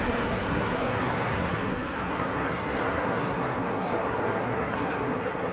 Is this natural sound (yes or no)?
no